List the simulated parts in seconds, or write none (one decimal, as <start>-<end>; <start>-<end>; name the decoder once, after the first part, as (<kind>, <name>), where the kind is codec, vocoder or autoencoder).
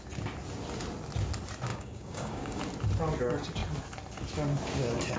1.7-2.6 (codec, DAC)